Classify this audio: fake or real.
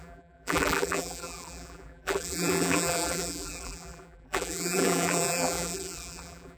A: fake